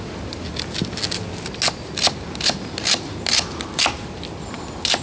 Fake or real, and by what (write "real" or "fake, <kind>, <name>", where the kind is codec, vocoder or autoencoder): real